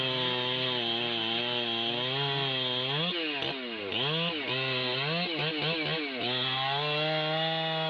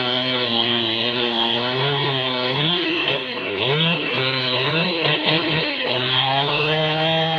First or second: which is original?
first